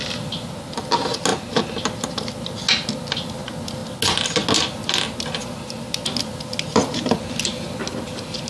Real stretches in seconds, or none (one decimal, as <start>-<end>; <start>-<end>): 0.0-8.5